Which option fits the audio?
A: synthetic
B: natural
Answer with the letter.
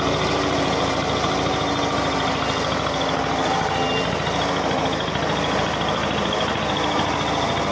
B